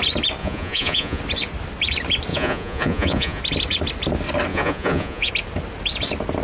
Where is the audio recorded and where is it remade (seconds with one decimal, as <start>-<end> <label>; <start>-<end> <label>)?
0.0-0.4 recorded; 0.4-1.2 remade; 1.2-2.3 recorded; 2.3-3.4 remade; 3.4-4.5 recorded; 4.5-5.3 remade; 5.3-6.4 recorded